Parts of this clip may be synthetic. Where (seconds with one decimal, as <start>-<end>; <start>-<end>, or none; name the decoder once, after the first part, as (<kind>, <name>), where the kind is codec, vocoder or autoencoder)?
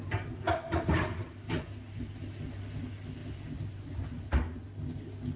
0.0-1.0 (vocoder, BigVGAN v2); 3.2-4.2